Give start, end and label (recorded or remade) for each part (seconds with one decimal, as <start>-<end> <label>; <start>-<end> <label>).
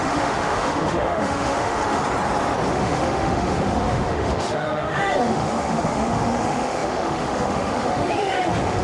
0.0-2.0 remade; 2.0-2.7 recorded; 2.7-8.8 remade